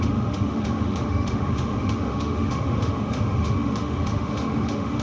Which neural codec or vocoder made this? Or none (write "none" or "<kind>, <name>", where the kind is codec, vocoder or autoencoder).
autoencoder, DAC-VAE